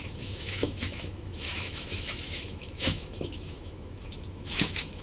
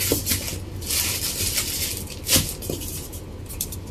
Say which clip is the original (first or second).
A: second